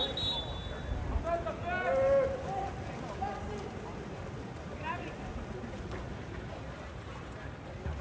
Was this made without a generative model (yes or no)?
yes